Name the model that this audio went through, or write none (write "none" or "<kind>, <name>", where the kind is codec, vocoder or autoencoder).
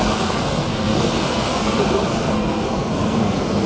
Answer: codec, SNAC